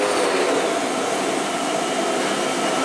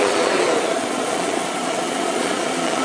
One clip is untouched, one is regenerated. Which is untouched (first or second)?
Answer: first